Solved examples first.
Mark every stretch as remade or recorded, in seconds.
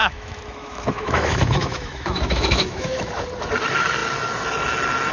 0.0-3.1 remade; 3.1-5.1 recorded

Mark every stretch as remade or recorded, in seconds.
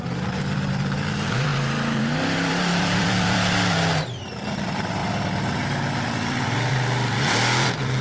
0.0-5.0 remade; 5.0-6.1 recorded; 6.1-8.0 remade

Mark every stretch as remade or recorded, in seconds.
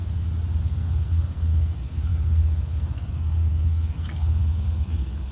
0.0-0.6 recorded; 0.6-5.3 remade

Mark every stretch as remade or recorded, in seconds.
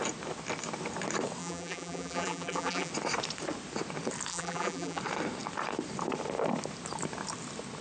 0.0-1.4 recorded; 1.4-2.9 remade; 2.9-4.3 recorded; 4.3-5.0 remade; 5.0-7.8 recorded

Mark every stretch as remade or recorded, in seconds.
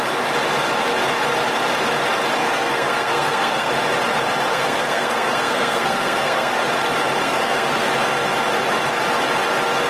0.0-2.4 recorded; 2.4-3.7 remade; 3.7-4.5 recorded; 4.5-6.6 remade; 6.6-7.2 recorded; 7.2-7.9 remade; 7.9-9.9 recorded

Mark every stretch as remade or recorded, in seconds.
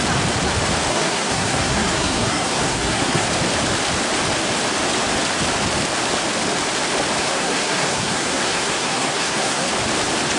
0.0-0.9 recorded; 0.9-3.3 remade; 3.3-7.2 recorded; 7.2-9.7 remade; 9.7-10.4 recorded